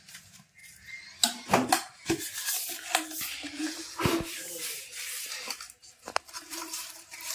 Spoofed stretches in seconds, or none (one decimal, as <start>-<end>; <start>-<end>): 0.0-0.6; 3.7-7.3